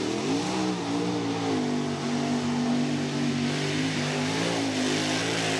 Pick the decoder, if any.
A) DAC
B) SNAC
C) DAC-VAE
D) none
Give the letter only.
D